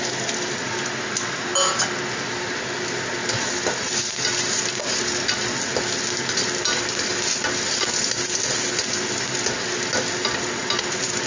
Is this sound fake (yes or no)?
no